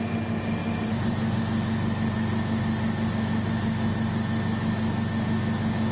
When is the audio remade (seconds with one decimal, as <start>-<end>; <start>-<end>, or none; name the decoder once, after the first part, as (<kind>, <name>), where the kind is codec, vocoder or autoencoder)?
0.6-1.4 (vocoder, BigVGAN v2)